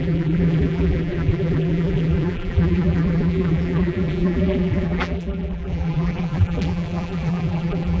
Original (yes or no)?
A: no